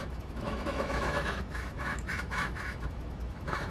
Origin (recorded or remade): remade